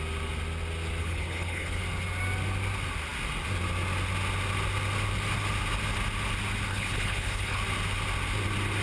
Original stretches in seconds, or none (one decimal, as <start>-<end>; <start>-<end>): 0.0-1.0; 1.8-6.7; 7.6-8.8

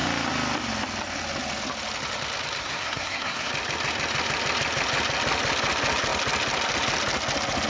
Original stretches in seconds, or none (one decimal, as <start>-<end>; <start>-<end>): 0.0-2.6; 3.5-7.7

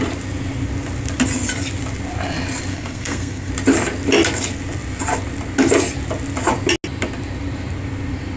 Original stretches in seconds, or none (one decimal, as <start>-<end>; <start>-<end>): 0.0-2.7; 3.5-8.4